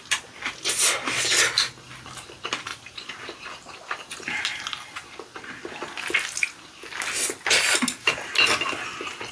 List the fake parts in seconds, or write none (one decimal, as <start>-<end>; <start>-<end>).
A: 2.7-4.4